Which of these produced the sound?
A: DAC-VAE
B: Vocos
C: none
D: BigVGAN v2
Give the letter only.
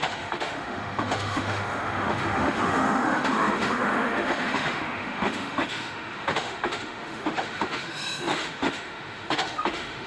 A